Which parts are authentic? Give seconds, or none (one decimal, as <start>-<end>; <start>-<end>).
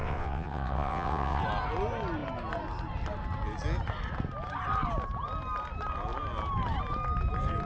1.4-7.6